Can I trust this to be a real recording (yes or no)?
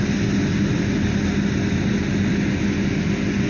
yes